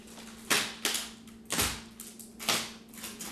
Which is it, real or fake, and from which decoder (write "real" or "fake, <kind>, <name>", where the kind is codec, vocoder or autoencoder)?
real